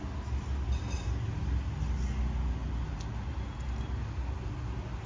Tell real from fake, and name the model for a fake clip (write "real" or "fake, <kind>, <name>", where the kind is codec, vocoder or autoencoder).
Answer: real